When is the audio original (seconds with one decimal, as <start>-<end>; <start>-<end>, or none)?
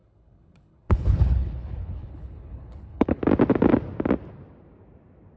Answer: 3.2-5.4